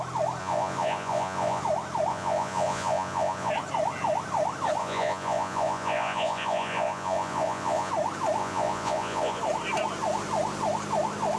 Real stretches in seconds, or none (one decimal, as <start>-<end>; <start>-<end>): 0.0-0.4; 1.6-2.1; 3.5-4.8; 7.9-8.4; 9.4-11.4